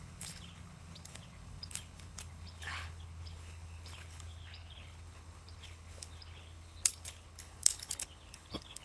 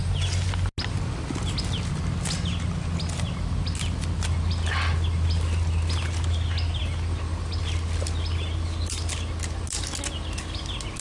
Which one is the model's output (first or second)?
first